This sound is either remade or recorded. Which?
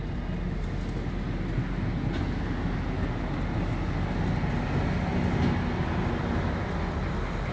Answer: recorded